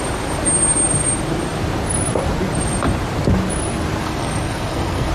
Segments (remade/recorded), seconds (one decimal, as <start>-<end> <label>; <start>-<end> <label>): 0.0-4.0 recorded; 4.0-5.1 remade